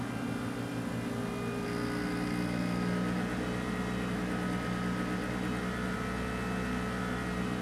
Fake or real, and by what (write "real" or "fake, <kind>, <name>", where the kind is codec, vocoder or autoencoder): real